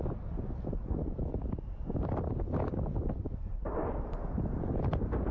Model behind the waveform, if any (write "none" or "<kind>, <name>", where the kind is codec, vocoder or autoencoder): none